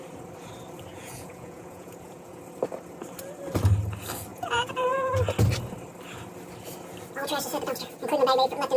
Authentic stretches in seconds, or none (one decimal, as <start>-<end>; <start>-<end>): 0.0-0.9; 2.4-4.3; 5.2-8.8